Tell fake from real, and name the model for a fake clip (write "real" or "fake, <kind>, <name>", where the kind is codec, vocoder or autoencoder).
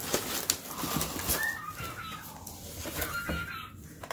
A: real